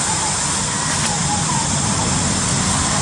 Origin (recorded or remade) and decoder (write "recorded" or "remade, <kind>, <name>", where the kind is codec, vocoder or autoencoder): recorded